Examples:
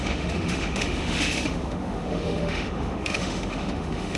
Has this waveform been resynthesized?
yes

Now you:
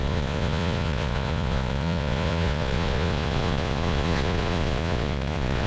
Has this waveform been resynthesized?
yes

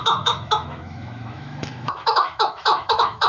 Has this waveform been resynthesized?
yes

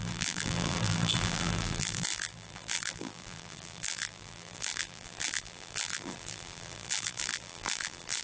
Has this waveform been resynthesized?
yes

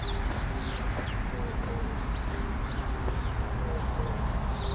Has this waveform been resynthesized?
no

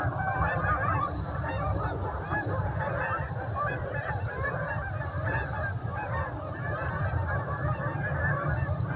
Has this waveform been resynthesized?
yes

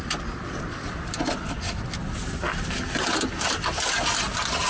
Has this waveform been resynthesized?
no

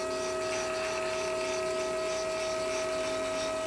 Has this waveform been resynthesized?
no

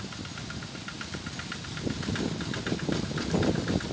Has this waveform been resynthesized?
no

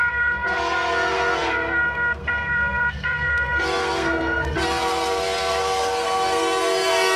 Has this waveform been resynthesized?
yes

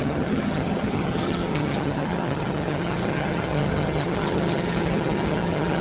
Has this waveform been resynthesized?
yes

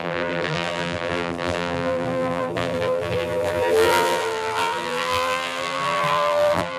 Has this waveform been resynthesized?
yes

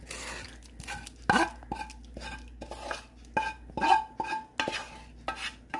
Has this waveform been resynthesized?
no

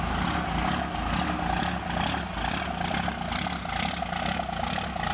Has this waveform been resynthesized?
no